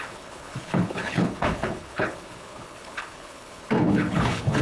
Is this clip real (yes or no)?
no